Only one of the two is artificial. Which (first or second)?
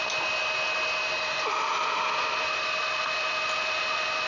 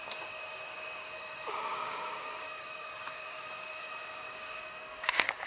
second